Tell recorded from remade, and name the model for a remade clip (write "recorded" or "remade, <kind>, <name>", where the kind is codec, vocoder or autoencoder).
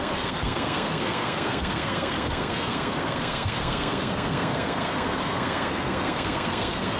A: remade, codec, SNAC